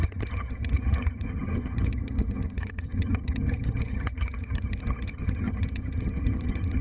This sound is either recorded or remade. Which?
remade